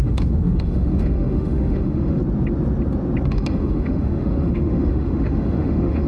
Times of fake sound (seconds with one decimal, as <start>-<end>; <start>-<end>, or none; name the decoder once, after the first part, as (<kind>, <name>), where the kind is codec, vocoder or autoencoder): 0.0-2.2 (autoencoder, DAC-VAE); 3.3-6.1